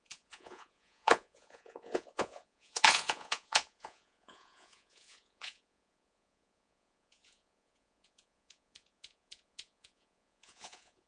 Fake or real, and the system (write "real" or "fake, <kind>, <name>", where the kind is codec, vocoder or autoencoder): fake, vocoder, Vocos